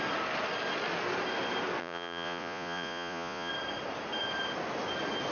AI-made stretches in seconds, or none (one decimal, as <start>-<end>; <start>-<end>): 1.8-3.5